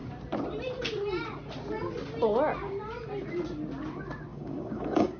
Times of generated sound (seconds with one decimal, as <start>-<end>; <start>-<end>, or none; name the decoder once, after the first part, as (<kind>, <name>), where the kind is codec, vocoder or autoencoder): 4.3-5.2 (codec, DAC)